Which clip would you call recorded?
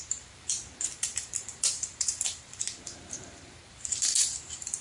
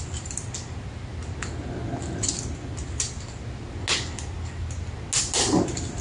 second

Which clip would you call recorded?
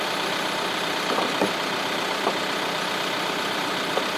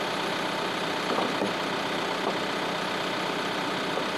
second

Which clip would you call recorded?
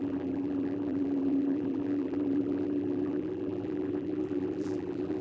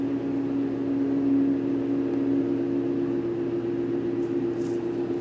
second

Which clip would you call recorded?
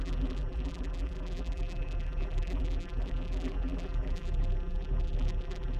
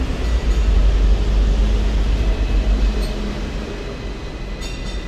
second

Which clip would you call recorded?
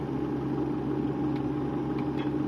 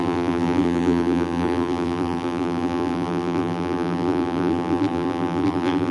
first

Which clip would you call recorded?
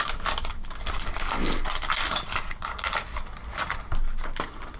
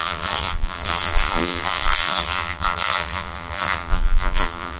first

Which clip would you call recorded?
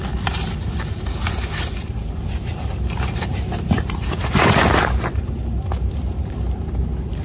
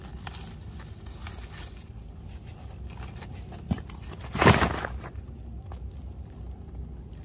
second